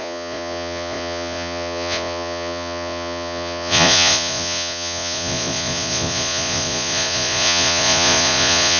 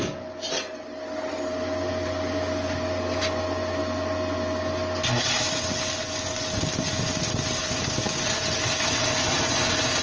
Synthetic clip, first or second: first